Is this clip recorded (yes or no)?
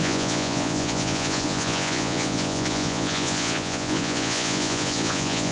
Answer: no